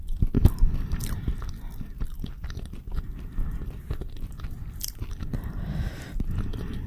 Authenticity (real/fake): real